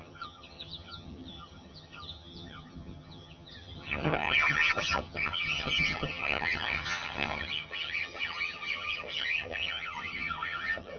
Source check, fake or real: fake